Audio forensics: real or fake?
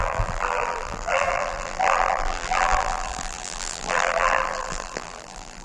fake